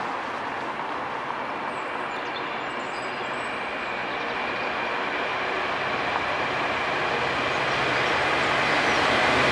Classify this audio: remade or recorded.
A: recorded